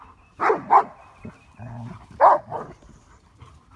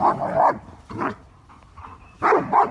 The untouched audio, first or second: first